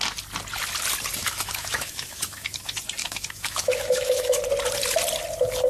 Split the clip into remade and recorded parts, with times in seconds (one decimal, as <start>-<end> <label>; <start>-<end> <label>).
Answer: 0.0-1.2 recorded; 1.2-2.6 remade; 2.6-3.0 recorded; 3.0-4.4 remade; 4.4-5.7 recorded